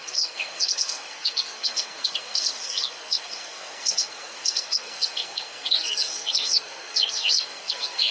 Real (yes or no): no